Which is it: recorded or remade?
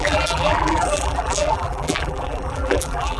remade